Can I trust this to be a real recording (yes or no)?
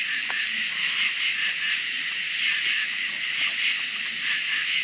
yes